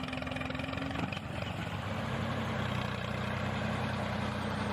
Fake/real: real